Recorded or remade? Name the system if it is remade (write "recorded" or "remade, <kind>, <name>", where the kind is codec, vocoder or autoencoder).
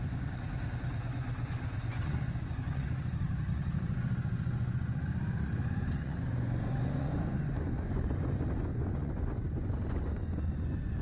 remade, vocoder, Vocos